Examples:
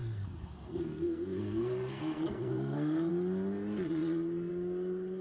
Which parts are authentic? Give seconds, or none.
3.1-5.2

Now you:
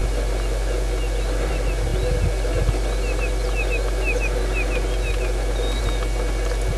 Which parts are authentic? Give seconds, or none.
0.0-6.8

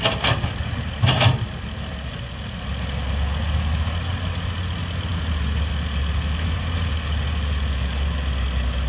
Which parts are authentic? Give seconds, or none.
0.0-8.9